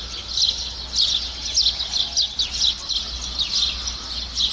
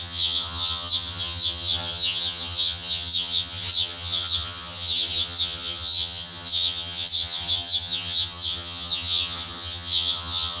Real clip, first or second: first